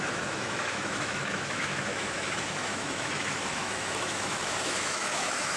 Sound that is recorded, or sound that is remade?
remade